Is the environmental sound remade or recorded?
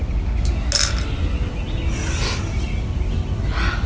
recorded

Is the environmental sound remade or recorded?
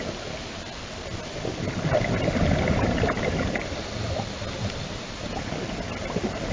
recorded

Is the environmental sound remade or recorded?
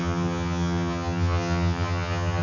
remade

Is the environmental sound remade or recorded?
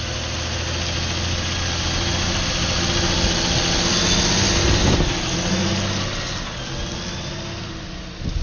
recorded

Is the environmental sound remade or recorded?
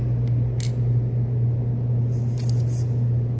recorded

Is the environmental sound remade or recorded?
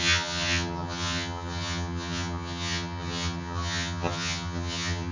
remade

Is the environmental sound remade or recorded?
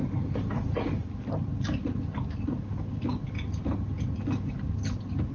recorded